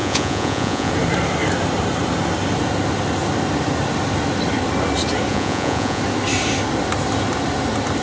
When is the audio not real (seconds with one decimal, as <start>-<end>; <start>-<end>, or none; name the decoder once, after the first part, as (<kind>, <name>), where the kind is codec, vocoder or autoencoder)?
0.0-0.9 (vocoder, Vocos); 5.3-6.0